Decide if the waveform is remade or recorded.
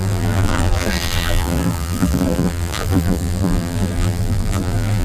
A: remade